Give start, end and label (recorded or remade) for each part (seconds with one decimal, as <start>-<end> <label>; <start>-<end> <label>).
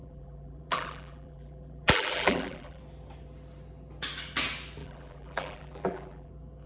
0.0-2.8 remade; 2.8-4.8 recorded; 4.8-6.3 remade; 6.3-6.7 recorded